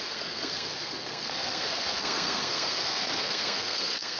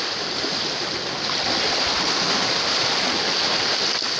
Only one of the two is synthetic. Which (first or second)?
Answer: first